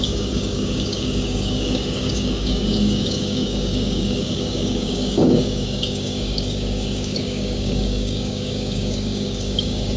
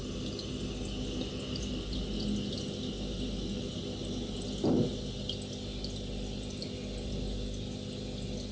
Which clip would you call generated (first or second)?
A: first